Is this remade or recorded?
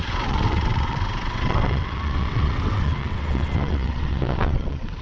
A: remade